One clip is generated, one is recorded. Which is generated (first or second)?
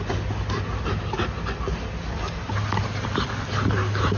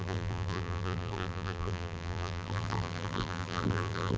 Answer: second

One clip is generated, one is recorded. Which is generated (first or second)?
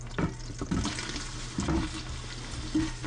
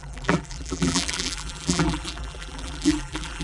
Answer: second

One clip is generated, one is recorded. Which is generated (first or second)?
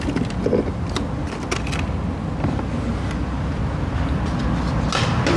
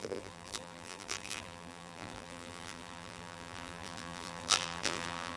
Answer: second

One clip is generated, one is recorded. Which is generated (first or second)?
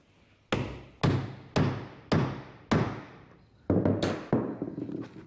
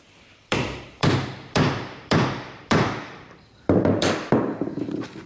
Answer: second